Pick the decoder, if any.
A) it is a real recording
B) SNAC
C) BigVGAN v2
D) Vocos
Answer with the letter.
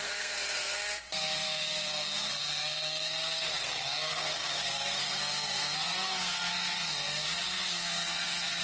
B